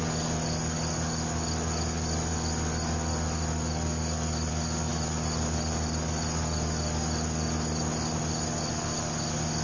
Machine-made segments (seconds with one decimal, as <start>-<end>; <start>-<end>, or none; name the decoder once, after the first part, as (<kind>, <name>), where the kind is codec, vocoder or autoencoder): none